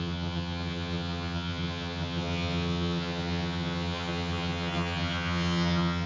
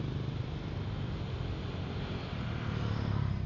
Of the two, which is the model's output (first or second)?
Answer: first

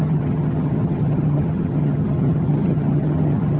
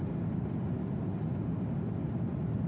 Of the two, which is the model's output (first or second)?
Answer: first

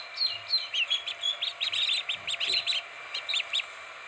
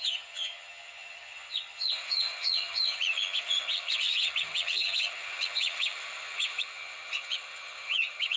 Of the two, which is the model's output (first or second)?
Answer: second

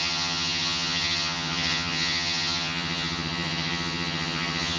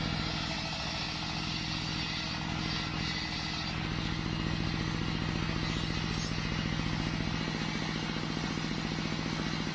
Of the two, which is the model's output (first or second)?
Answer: first